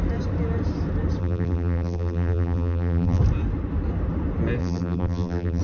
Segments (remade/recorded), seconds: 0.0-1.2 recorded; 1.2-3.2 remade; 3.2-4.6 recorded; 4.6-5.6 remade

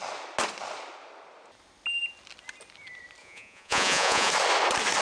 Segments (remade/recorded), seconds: 0.0-3.2 recorded; 3.2-4.3 remade; 4.3-5.0 recorded

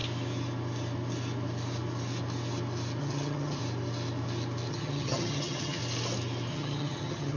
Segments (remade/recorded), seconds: 0.0-3.0 recorded; 3.0-3.6 remade; 3.6-4.7 recorded; 4.7-5.8 remade; 5.8-6.5 recorded; 6.5-7.4 remade